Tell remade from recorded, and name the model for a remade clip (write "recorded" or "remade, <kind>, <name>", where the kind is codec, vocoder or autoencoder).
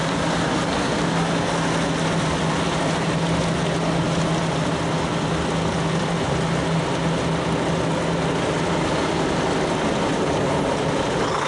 recorded